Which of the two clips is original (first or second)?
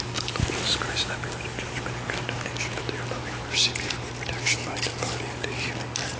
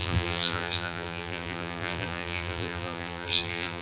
first